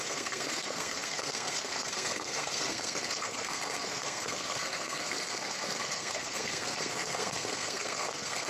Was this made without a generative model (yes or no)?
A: no